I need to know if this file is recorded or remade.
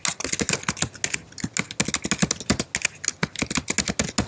recorded